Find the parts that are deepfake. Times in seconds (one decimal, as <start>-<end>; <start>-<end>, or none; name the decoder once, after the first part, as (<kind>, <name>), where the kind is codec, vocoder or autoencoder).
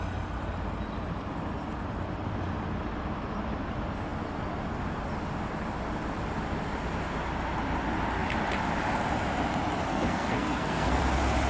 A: 9.9-11.0 (codec, SNAC)